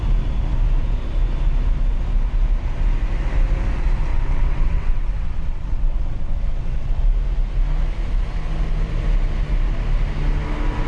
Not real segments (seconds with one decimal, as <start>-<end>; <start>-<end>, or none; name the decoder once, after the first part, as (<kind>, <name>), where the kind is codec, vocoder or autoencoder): 4.1-7.0 (vocoder, WaveNeXt)